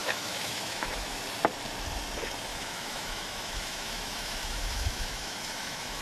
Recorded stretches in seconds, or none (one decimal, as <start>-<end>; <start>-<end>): 1.2-2.5